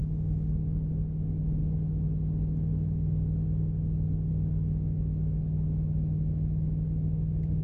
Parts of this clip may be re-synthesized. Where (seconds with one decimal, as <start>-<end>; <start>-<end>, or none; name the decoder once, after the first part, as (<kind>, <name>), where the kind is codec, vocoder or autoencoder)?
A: 0.9-1.6 (autoencoder, DAC-VAE); 4.3-7.6